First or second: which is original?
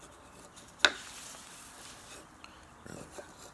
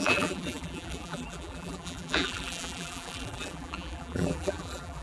first